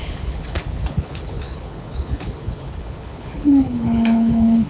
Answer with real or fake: fake